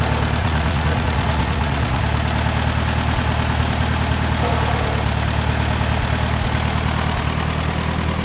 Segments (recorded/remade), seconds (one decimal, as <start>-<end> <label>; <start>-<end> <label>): 0.0-0.4 recorded; 0.4-2.0 remade; 2.0-8.2 recorded